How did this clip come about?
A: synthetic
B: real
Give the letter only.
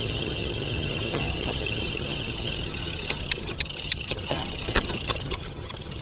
A